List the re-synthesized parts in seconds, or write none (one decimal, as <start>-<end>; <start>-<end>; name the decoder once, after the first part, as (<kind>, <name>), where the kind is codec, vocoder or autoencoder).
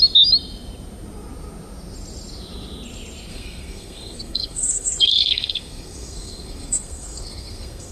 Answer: 3.3-7.9 (codec, SNAC)